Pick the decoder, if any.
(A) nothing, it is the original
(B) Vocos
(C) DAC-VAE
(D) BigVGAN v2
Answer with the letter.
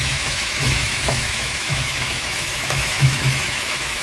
C